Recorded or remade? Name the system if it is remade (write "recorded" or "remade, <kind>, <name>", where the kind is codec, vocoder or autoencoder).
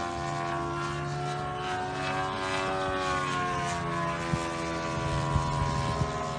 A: recorded